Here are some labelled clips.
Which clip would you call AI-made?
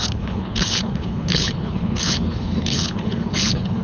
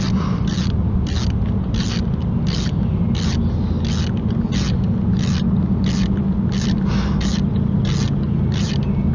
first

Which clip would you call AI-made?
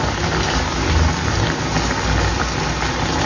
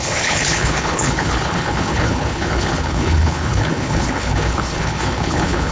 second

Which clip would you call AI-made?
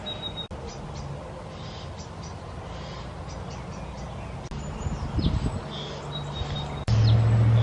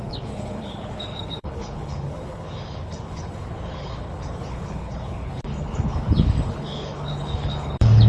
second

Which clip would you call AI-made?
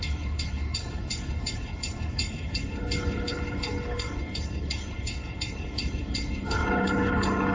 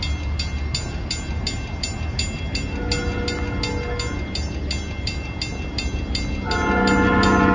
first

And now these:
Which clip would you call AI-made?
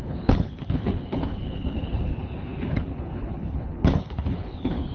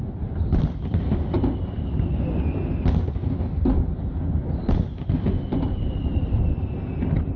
first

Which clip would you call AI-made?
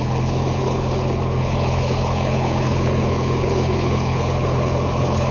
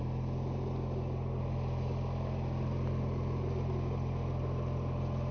first